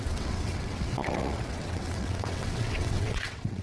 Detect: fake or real fake